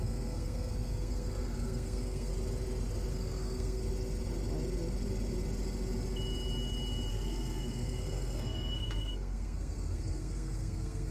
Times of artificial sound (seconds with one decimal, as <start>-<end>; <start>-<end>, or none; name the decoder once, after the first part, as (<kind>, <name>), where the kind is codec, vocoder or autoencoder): 0.0-2.3 (codec, SNAC); 3.1-3.8; 7.1-11.1